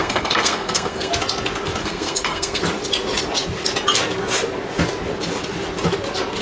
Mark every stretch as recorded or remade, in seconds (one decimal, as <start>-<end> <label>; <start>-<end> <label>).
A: 0.0-1.1 remade; 1.1-1.8 recorded; 1.8-2.6 remade; 2.6-6.4 recorded